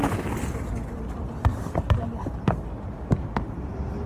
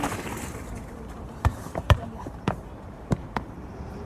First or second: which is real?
first